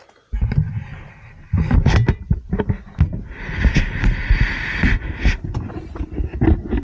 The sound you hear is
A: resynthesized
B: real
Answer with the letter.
B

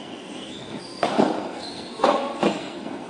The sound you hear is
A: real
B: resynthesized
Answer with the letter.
B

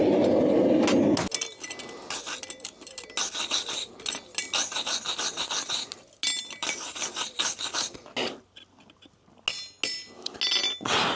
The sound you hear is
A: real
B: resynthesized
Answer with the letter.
A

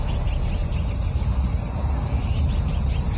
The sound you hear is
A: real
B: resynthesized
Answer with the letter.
A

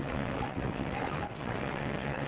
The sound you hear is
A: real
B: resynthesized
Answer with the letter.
B